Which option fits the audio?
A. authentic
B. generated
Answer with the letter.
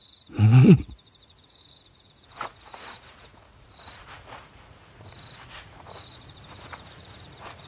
B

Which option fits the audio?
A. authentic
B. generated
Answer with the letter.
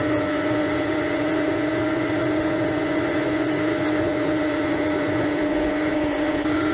B